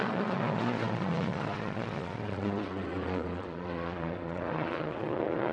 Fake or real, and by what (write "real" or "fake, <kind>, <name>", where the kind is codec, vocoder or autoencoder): fake, vocoder, Vocos